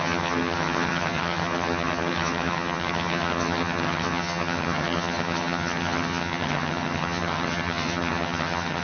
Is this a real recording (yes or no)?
no